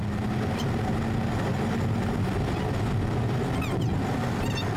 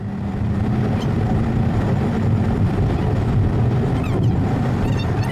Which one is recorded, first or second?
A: first